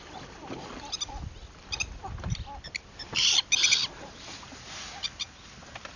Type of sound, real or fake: real